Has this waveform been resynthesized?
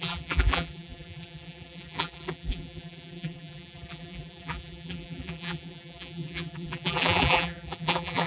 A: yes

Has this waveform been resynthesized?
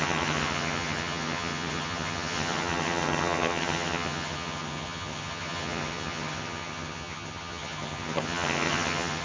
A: yes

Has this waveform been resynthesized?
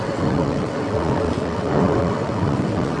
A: yes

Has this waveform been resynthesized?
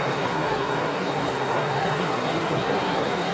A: yes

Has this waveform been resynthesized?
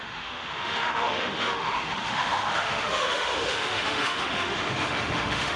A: yes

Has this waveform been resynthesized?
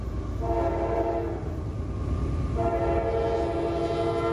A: no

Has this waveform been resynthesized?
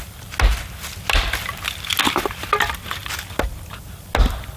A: no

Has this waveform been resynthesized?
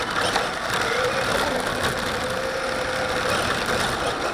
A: no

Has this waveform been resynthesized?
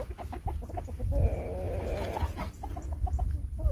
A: no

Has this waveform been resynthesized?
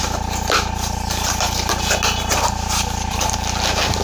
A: no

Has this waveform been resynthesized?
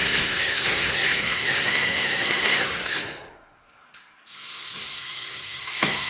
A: yes